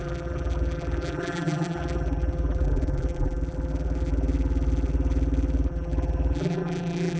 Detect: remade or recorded remade